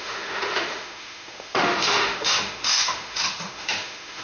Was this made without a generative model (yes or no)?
no